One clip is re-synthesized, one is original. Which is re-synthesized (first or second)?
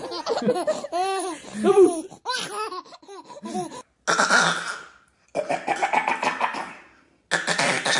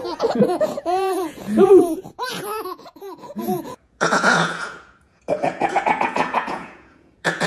second